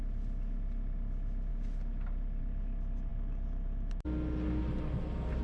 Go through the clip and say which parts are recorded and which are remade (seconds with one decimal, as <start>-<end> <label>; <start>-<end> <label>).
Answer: 0.0-5.4 recorded